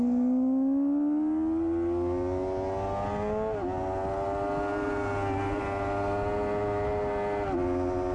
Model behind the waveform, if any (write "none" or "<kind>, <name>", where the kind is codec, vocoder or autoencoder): none